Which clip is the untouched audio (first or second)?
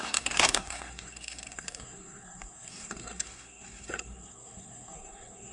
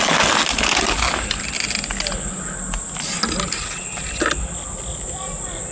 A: second